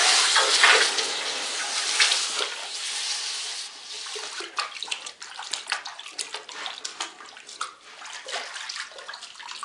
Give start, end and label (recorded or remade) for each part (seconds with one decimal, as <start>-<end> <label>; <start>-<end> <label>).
0.0-2.6 recorded; 2.6-7.5 remade; 7.5-9.6 recorded